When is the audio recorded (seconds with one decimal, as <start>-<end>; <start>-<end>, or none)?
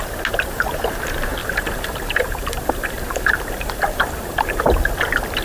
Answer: 0.0-1.4; 4.6-5.4